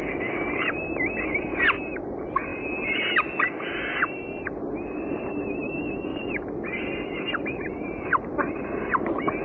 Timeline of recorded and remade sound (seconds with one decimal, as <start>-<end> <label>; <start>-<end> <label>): 0.0-6.1 recorded; 6.1-8.0 remade; 8.0-9.4 recorded